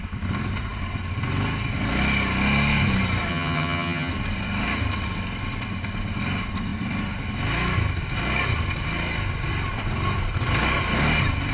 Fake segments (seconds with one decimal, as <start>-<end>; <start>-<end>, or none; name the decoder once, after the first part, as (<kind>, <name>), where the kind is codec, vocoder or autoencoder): 3.3-4.1 (vocoder, HiFi-GAN)

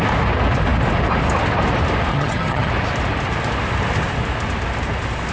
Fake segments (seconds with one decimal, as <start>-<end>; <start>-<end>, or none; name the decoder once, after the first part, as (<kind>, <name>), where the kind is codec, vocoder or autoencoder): 2.1-2.7 (vocoder, HiFi-GAN)

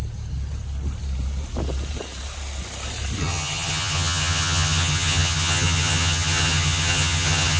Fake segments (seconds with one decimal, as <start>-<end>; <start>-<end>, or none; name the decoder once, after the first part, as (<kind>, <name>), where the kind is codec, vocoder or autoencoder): 3.2-7.6 (vocoder, HiFi-GAN)